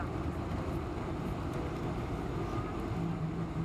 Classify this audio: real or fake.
real